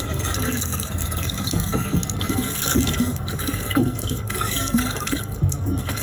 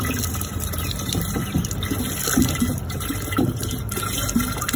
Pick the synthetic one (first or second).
first